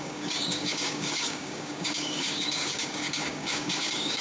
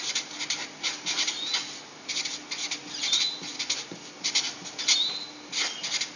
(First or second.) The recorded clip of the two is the second